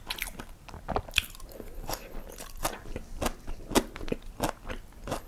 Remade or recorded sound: recorded